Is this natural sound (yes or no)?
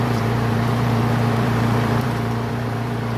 no